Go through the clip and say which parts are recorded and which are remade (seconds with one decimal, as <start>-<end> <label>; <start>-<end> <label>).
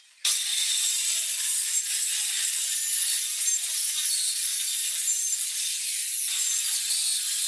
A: 0.0-0.5 recorded; 0.5-1.8 remade; 1.8-4.4 recorded; 4.4-6.6 remade; 6.6-7.5 recorded